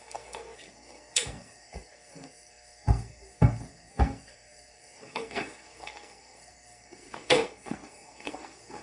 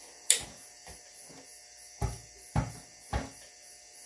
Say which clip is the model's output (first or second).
first